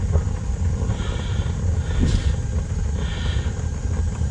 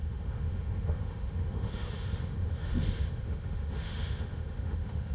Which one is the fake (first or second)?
second